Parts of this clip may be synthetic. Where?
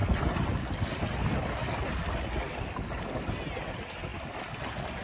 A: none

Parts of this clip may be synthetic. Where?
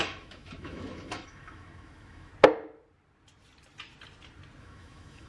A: 0.0-2.3 (autoencoder, DAC-VAE); 4.6-5.3